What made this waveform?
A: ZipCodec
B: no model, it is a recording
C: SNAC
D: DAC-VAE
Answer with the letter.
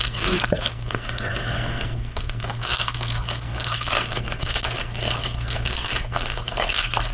C